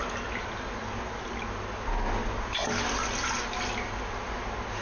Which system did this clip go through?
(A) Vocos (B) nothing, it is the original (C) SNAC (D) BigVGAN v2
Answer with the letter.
B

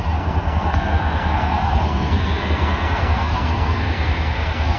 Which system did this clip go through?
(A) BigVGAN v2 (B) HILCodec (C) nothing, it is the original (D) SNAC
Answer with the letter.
D